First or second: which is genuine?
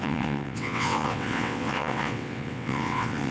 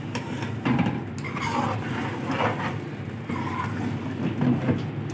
second